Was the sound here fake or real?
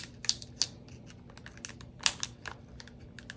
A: real